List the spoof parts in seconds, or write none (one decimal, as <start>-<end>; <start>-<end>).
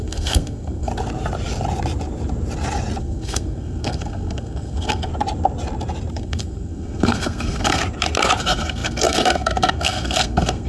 0.0-0.9; 3.0-5.1; 6.1-7.8; 8.4-10.7